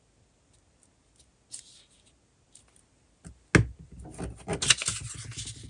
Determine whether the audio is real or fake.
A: real